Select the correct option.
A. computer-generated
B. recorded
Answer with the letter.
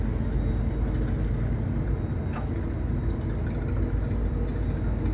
B